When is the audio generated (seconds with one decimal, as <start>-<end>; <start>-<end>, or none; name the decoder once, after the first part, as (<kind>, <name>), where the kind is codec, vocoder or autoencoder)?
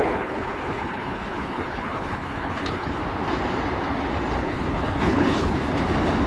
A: 0.0-3.0 (codec, HILCodec); 4.4-5.6